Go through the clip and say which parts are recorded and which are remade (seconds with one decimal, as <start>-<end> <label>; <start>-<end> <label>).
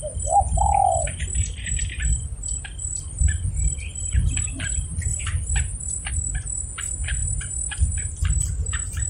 0.0-2.9 recorded; 2.9-4.6 remade; 4.6-5.1 recorded; 5.1-6.1 remade; 6.1-7.2 recorded; 7.2-9.1 remade